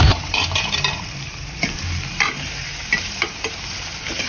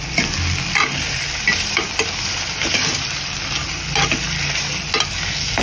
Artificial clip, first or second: first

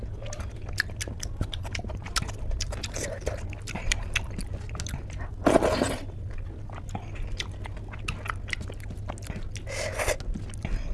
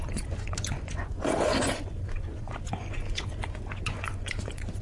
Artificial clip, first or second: second